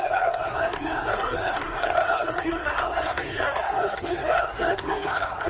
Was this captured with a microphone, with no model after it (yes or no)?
no